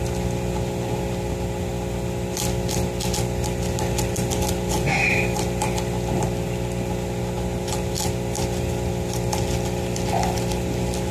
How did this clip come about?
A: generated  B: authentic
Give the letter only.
B